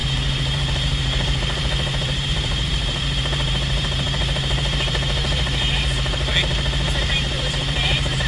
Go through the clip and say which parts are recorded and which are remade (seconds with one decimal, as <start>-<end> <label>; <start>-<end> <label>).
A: 0.0-6.3 remade; 6.3-7.0 recorded; 7.0-8.3 remade